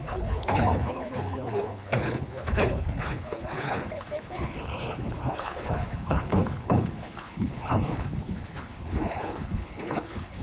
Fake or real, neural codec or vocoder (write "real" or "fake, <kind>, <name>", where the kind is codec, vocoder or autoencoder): fake, codec, HILCodec